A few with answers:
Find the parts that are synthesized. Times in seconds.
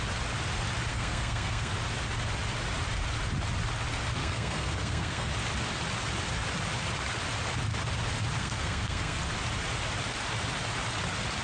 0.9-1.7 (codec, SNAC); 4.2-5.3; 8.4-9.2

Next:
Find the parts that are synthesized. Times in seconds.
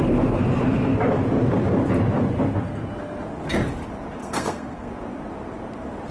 4.2-4.9 (codec, SNAC)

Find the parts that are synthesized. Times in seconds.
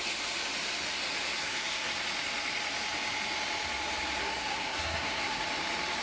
1.4-1.9 (codec, SNAC); 4.2-5.4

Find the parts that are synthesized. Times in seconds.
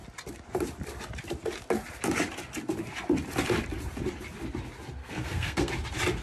5.0-5.7 (codec, SNAC)